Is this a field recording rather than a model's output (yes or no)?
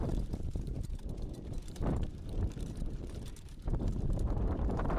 no